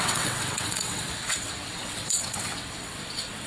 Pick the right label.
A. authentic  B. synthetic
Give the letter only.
B